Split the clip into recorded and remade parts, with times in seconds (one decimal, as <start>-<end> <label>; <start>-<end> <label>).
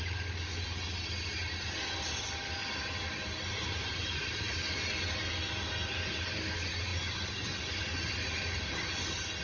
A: 0.0-9.4 recorded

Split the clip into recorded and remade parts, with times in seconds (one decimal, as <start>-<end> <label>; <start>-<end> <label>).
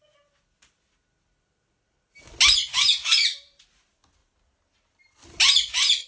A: 0.0-6.1 recorded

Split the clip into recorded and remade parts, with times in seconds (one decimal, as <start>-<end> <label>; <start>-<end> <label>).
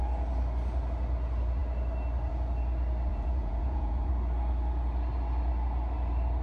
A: 0.0-3.1 recorded; 3.1-4.1 remade; 4.1-6.4 recorded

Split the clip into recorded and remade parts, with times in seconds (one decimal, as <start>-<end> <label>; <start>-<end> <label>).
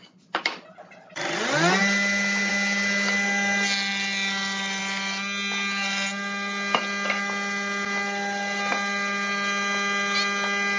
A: 0.0-10.8 recorded